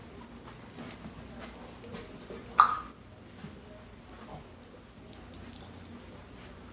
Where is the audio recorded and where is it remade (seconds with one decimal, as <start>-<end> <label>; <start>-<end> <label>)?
0.0-1.3 remade; 1.3-6.7 recorded